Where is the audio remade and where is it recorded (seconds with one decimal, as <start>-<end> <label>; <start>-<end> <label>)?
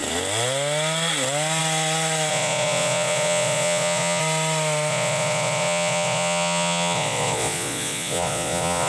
0.0-2.3 recorded; 2.3-4.2 remade; 4.2-4.9 recorded; 4.9-8.9 remade